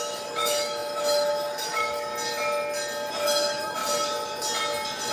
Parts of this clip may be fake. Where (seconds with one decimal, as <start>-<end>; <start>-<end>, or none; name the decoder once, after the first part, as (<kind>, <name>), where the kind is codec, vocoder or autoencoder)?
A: 0.0-2.1 (autoencoder, DAC-VAE); 3.1-3.8

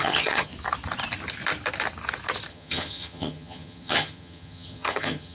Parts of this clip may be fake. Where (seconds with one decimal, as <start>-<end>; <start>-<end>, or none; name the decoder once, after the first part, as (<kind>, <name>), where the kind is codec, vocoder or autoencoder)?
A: 0.0-0.5 (vocoder, HiFi-GAN); 2.5-5.3